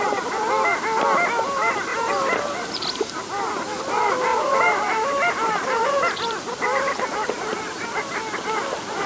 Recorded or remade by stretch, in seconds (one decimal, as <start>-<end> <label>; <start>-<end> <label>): 0.0-4.3 recorded; 4.3-7.6 remade; 7.6-9.1 recorded